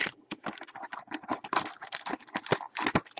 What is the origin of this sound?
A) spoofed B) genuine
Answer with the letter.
B